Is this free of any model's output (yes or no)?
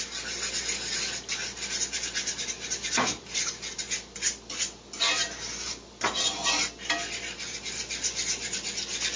yes